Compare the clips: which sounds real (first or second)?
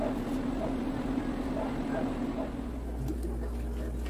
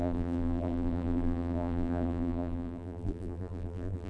first